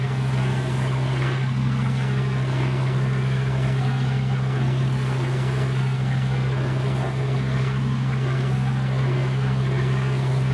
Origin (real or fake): fake